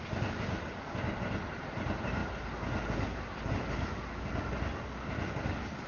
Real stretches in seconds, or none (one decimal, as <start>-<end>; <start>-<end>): 0.0-5.9